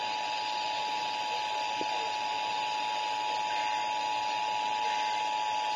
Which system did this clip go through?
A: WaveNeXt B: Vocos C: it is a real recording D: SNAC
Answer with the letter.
C